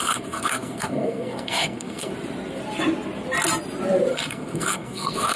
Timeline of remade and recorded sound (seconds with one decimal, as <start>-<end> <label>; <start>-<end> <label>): 0.0-2.1 remade; 2.1-4.1 recorded; 4.1-5.4 remade